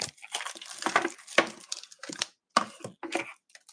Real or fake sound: real